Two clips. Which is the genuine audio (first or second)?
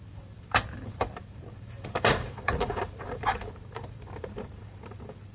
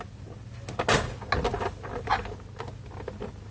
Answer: second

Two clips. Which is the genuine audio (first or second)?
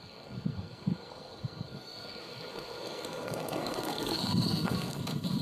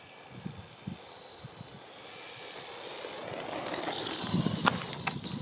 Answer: second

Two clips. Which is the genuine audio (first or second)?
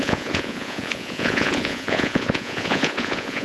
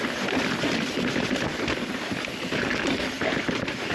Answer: second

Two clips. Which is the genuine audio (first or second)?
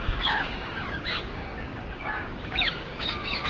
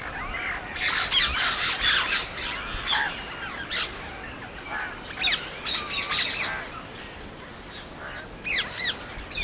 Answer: second